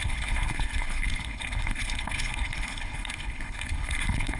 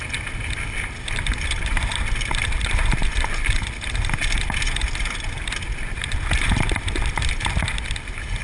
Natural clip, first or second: second